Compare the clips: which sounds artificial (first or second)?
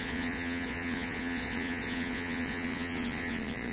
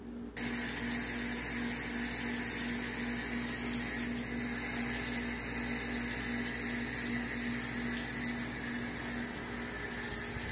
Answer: first